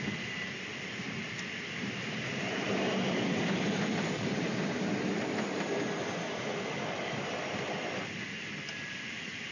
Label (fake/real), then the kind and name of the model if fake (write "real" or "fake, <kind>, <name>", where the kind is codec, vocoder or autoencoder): fake, vocoder, BigVGAN v2